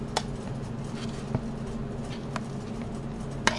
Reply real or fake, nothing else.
real